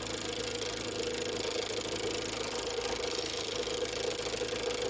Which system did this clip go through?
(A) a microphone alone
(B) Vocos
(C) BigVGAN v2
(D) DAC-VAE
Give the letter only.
A